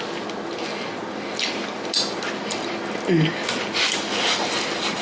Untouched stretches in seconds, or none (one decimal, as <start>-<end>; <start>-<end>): 0.0-5.0